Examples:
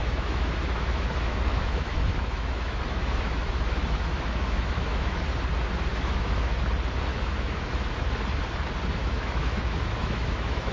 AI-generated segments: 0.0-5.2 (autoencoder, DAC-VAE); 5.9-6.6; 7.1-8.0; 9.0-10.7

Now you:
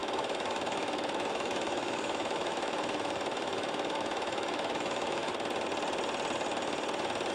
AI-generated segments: 0.0-5.3 (autoencoder, DAC-VAE)

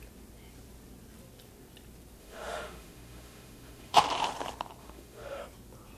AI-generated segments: 2.2-4.0 (autoencoder, DAC-VAE); 4.8-5.4

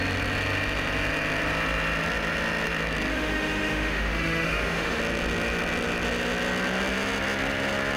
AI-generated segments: 3.1-5.0 (autoencoder, DAC-VAE)

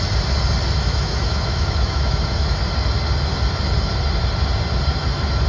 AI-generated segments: 0.8-2.6 (autoencoder, DAC-VAE)

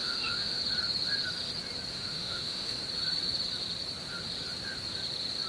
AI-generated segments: 0.0-0.6 (autoencoder, DAC-VAE); 1.9-2.8

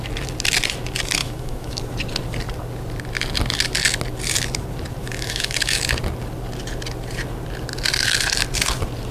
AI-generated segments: 1.2-1.8 (autoencoder, DAC-VAE); 5.0-5.8

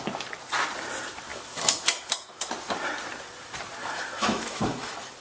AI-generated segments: 1.3-2.5 (autoencoder, DAC-VAE); 3.8-5.2